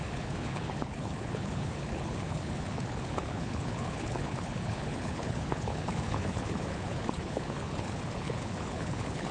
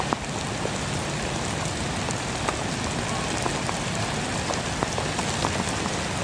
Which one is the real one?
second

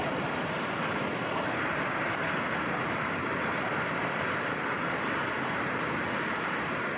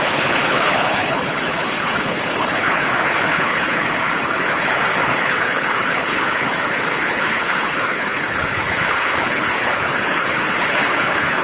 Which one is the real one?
first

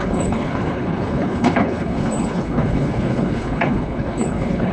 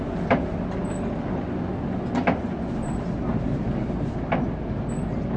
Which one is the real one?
second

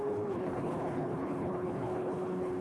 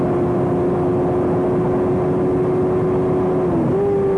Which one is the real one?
second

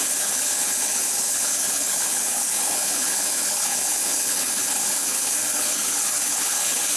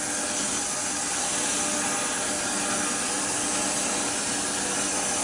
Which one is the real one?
second